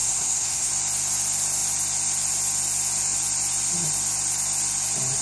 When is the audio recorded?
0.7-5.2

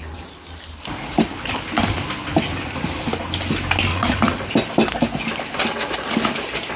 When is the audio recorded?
0.0-3.9; 4.5-6.8